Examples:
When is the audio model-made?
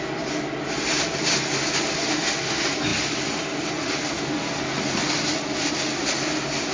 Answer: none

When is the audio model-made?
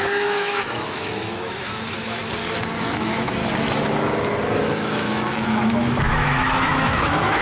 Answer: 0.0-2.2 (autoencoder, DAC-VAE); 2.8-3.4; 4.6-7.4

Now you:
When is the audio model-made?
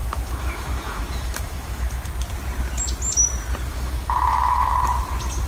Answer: 0.0-2.1 (autoencoder, DAC-VAE); 3.7-4.7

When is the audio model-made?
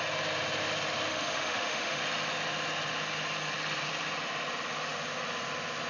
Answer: 1.1-2.0 (autoencoder, DAC-VAE)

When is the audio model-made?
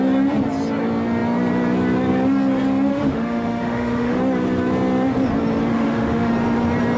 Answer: 2.9-4.2 (autoencoder, DAC-VAE); 5.7-6.3